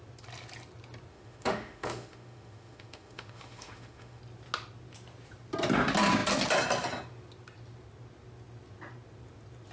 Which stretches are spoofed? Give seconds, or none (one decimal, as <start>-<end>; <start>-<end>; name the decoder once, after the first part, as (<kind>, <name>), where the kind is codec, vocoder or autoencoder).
1.1-4.2 (autoencoder, DAC-VAE)